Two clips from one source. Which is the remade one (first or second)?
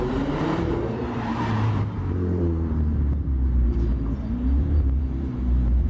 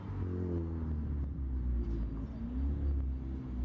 first